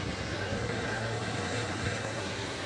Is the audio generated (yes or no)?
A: yes